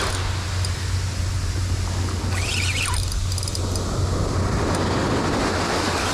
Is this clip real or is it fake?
real